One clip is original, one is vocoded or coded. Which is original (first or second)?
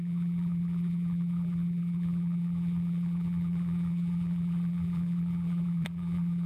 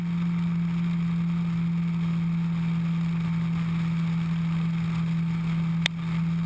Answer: second